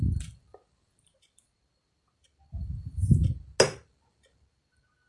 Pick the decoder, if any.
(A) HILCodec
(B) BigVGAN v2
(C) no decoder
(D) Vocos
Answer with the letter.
C